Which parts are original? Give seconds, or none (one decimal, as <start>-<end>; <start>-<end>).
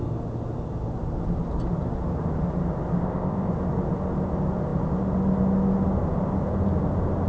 0.0-3.0; 3.5-7.3